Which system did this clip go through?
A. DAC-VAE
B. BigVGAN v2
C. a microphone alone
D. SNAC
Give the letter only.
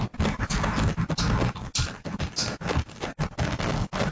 C